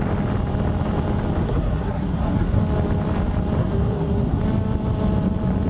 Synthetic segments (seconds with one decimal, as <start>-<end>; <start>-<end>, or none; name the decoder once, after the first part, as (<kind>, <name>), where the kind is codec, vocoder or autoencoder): 1.4-2.6 (codec, SNAC); 3.6-4.4